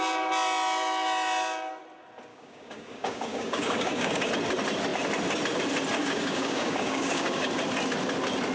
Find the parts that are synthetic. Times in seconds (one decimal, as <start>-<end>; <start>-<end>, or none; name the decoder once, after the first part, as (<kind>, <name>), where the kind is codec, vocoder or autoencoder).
2.3-4.3 (codec, DAC); 6.0-7.5